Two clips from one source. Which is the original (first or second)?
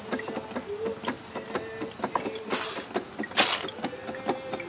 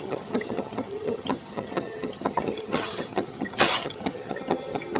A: first